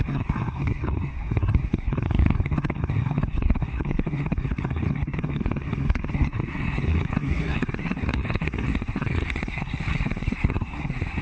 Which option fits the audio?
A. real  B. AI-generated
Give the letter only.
B